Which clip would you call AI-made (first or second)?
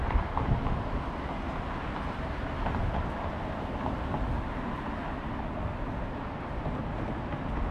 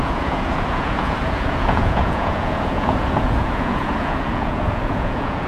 second